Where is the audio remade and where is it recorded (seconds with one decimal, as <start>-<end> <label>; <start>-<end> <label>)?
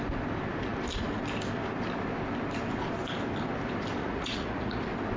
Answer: 0.0-4.0 recorded; 4.0-4.8 remade; 4.8-5.2 recorded